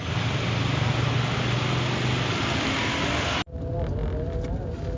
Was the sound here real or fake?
real